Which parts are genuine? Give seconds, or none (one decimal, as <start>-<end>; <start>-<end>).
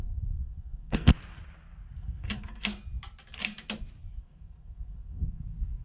1.1-2.0; 2.7-4.2